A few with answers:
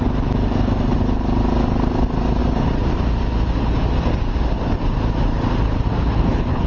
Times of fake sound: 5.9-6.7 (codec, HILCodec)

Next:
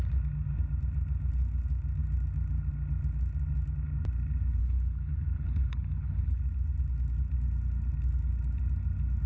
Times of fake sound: 4.6-6.4 (codec, HILCodec)

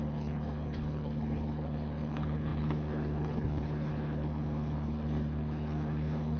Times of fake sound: 0.0-6.4 (codec, HILCodec)